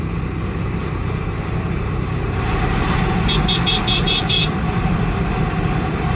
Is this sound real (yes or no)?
no